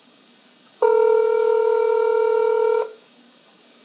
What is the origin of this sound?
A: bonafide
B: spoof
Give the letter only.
B